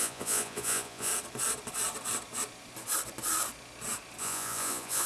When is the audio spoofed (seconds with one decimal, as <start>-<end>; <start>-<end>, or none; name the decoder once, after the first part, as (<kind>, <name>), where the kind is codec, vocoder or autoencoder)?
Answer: 0.0-1.1 (vocoder, Vocos); 4.2-5.1